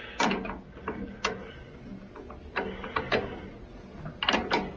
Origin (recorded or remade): recorded